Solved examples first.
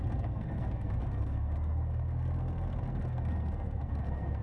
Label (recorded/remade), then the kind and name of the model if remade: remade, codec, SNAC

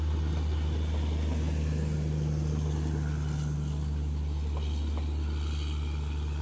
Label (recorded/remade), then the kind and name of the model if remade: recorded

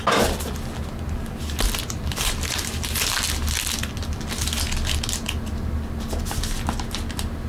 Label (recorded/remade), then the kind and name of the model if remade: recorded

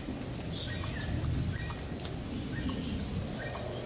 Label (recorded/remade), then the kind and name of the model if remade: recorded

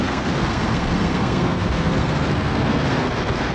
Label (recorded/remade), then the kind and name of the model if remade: remade, codec, SNAC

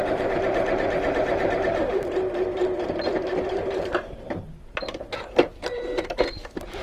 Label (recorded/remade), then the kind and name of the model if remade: remade, vocoder, BigVGAN v2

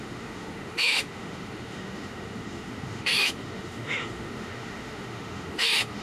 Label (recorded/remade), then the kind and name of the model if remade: remade, autoencoder, DAC-VAE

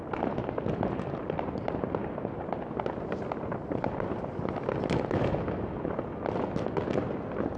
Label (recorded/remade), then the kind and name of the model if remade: recorded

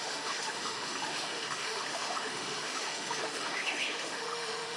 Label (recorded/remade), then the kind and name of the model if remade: remade, autoencoder, DAC-VAE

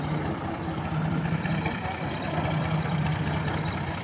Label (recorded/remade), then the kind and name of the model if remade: recorded